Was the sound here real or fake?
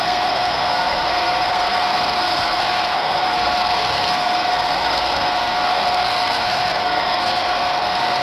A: fake